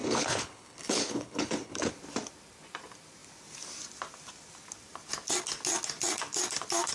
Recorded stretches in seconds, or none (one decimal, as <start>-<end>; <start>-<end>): 1.9-6.9